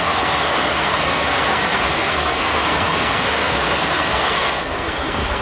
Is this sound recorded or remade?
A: remade